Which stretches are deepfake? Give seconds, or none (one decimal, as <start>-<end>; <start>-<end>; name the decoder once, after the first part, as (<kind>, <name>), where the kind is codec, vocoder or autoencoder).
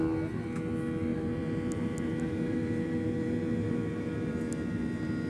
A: 1.1-4.3 (vocoder, BigVGAN v2)